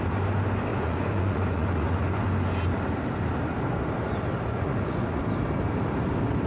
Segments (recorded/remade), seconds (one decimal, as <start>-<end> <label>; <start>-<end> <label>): 0.0-0.7 recorded; 0.7-2.2 remade; 2.2-4.5 recorded; 4.5-5.2 remade; 5.2-6.5 recorded